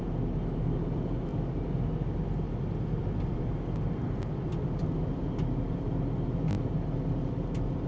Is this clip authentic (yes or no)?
yes